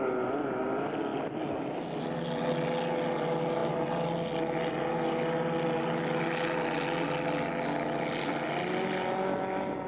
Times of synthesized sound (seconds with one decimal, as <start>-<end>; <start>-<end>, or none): none